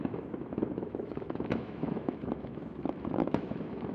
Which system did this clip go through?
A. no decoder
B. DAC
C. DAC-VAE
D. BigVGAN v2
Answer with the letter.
C